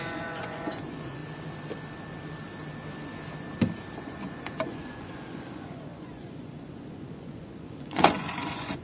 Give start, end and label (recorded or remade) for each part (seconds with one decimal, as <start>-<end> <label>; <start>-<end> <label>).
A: 0.0-1.2 remade; 1.2-4.0 recorded; 4.0-8.8 remade